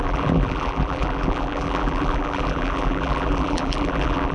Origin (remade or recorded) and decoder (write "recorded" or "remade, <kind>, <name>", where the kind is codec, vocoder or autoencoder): remade, vocoder, BigVGAN v2